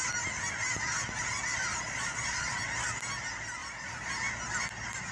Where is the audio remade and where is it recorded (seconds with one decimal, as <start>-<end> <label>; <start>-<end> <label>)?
0.0-1.7 recorded; 1.7-2.5 remade; 2.5-3.6 recorded; 3.6-4.1 remade; 4.1-5.1 recorded